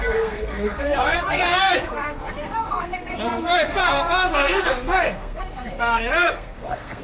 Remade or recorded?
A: remade